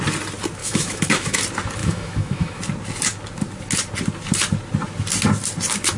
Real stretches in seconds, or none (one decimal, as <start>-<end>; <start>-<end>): 0.0-0.6; 1.4-1.8; 2.6-6.0